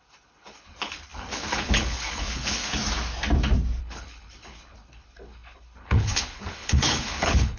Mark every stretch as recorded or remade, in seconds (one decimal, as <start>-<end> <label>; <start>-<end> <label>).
0.0-2.8 remade; 2.8-3.8 recorded; 3.8-7.6 remade